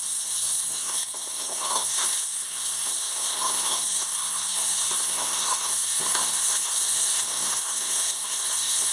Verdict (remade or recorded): remade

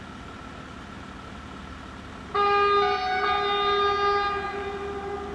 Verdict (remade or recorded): recorded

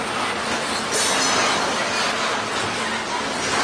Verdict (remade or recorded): recorded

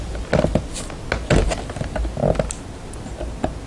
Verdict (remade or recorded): recorded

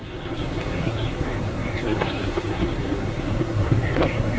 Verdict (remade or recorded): remade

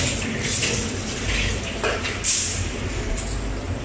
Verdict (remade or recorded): recorded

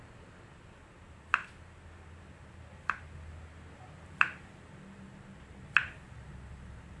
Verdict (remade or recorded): recorded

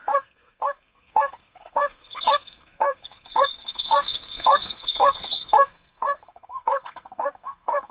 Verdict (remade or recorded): remade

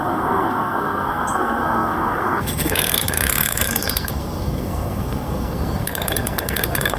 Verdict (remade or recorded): remade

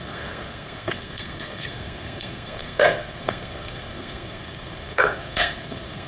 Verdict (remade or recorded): remade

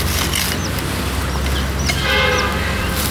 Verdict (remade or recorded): recorded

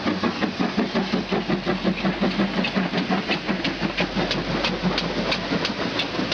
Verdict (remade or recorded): recorded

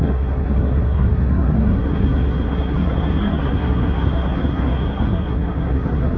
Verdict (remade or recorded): remade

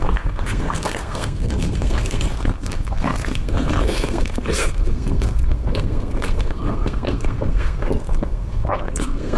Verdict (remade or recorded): remade